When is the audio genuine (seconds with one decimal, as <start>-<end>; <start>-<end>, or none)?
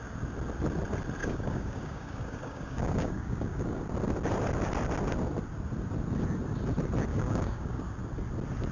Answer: 0.0-1.2; 3.8-7.1; 7.8-8.7